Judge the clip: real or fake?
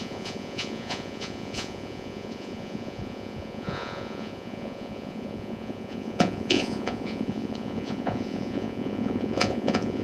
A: fake